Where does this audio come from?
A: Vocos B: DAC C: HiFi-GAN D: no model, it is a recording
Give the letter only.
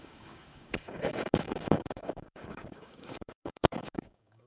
B